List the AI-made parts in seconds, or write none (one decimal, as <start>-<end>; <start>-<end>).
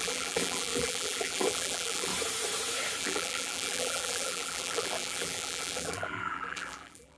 0.0-2.1; 3.0-7.2